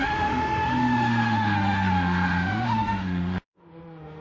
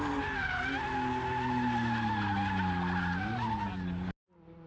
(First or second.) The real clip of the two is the second